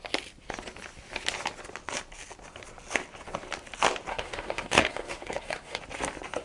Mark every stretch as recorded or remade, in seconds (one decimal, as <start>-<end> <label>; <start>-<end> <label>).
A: 0.0-4.1 recorded; 4.1-5.8 remade; 5.8-6.4 recorded